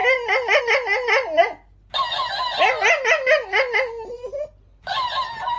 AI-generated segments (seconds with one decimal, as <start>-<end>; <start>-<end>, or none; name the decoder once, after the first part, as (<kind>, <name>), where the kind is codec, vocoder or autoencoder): none

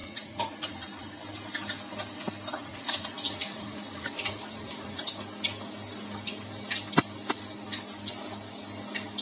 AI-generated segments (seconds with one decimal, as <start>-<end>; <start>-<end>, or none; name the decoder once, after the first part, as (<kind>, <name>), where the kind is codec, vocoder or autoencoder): 0.0-1.2 (vocoder, Vocos); 2.6-5.0

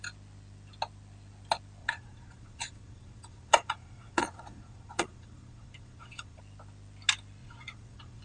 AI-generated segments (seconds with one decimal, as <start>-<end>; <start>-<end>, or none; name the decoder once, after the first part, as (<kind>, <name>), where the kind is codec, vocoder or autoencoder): 1.8-6.4 (vocoder, Vocos); 7.4-8.2

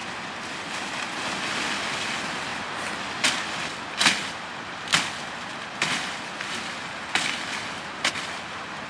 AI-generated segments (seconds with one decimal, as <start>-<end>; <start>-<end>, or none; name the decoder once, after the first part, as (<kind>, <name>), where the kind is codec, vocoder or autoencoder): none

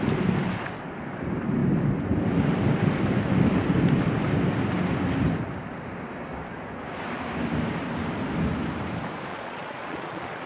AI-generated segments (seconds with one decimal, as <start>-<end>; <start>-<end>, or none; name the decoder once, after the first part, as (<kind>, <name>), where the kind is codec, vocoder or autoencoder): 9.3-10.5 (vocoder, Vocos)

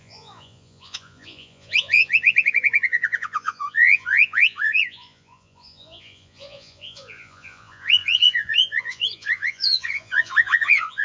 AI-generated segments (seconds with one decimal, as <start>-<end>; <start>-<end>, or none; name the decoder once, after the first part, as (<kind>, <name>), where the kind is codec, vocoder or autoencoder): 0.0-11.0 (vocoder, Vocos)

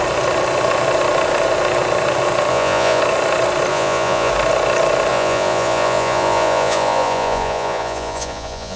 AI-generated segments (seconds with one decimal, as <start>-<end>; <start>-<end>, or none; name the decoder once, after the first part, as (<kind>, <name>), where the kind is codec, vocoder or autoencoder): 2.5-3.0 (vocoder, Vocos); 3.7-4.3; 5.1-8.8